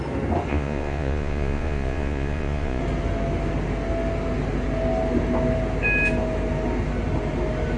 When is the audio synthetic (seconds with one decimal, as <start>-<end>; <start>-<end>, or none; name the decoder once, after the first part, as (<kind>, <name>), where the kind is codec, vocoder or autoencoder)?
0.5-2.8 (vocoder, Vocos)